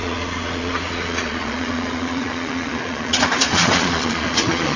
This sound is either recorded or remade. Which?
remade